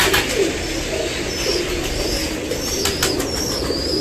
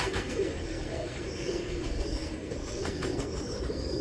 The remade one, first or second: second